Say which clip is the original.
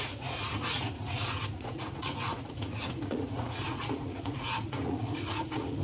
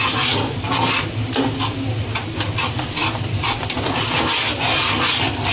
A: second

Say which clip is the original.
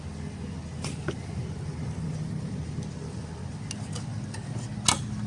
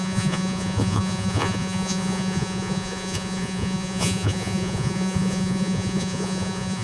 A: first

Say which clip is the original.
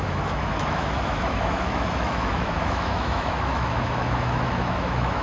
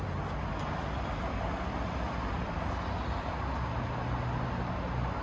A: second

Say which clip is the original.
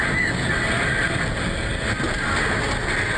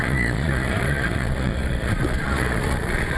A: first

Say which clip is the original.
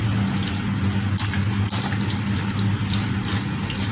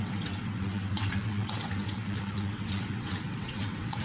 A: first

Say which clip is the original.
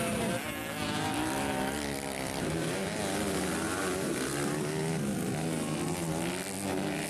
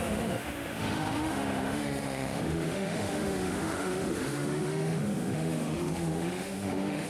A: first